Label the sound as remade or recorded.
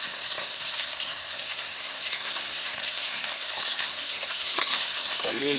remade